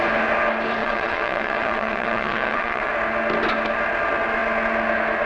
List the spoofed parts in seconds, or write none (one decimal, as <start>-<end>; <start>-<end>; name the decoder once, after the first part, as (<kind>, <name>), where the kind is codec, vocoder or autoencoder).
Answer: 0.8-2.9 (vocoder, WaveNeXt)